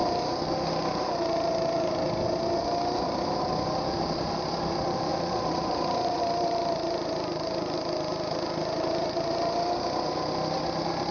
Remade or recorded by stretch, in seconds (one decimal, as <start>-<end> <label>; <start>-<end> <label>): 0.0-5.1 recorded; 5.1-6.2 remade; 6.2-11.1 recorded